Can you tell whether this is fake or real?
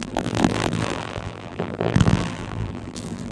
fake